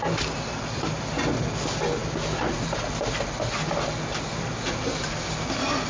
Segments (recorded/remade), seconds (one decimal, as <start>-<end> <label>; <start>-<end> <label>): 0.0-5.9 recorded